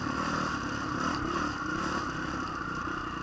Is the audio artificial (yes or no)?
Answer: no